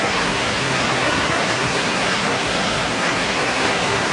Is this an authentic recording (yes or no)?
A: no